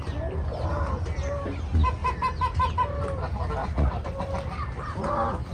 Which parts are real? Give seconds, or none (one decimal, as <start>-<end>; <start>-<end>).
0.0-5.5